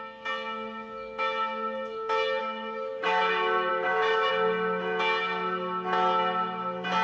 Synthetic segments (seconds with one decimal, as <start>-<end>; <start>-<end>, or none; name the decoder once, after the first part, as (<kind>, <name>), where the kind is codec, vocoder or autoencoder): 2.4-3.2 (codec, DAC); 3.7-4.3